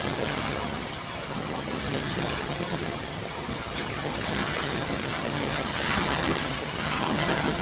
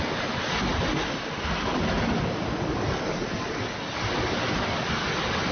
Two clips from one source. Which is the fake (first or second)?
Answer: first